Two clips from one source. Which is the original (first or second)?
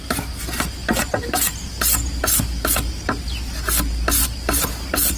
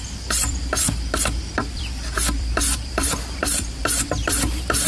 first